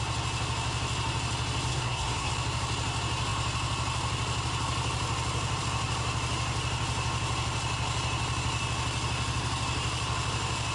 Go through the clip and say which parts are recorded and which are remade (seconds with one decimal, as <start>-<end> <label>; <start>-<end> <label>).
0.0-1.7 recorded; 1.7-2.3 remade; 2.3-10.7 recorded